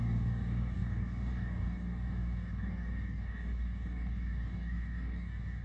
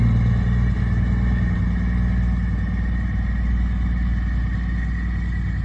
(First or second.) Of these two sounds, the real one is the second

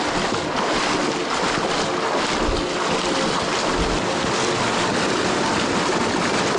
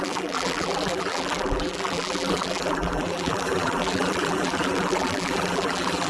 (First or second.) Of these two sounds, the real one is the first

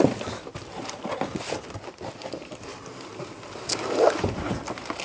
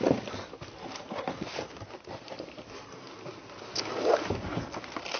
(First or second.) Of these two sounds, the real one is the second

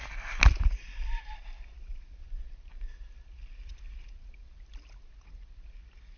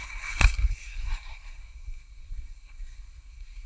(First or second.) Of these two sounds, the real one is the first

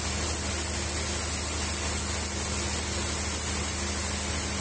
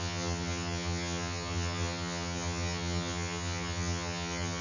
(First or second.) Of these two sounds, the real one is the first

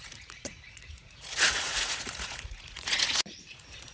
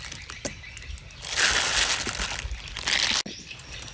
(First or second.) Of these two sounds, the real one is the second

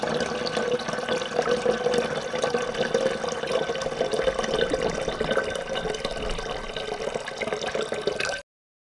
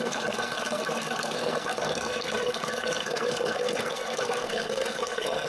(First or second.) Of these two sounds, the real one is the first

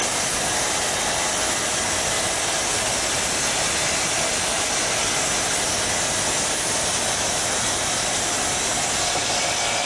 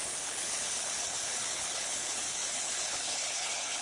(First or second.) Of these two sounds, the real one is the first